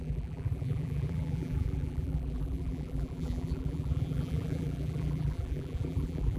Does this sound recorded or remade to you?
remade